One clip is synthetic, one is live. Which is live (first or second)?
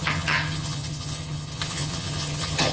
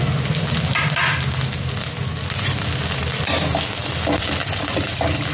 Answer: second